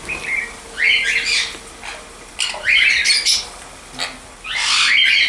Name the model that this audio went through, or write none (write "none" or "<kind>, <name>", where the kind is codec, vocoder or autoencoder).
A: none